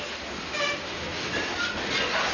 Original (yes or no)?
yes